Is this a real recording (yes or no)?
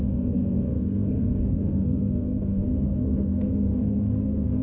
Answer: no